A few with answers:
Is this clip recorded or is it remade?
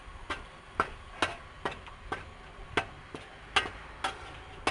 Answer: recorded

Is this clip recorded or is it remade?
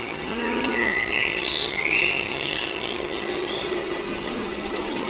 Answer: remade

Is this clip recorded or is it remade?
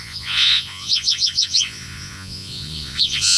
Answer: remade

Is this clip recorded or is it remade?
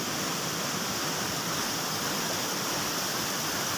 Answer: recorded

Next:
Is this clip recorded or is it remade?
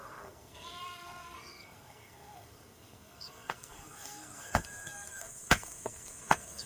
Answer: remade